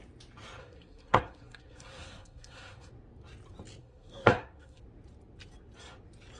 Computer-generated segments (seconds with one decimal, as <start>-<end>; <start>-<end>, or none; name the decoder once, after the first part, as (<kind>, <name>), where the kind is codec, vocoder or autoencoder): 0.6-2.9 (codec, SNAC); 3.8-4.8